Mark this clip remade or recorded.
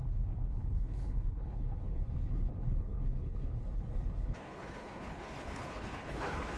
remade